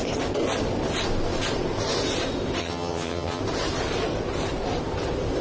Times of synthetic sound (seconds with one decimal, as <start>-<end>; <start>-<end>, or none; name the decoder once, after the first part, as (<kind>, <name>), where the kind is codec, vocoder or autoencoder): 2.6-3.4 (vocoder, HiFi-GAN)